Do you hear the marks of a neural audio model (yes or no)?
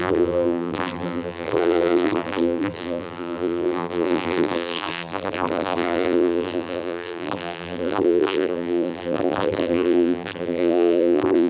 yes